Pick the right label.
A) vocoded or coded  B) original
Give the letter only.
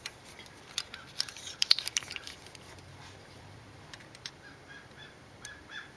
A